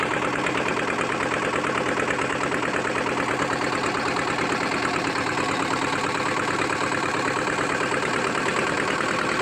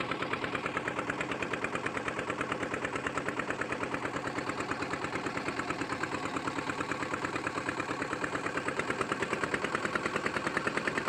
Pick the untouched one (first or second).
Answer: first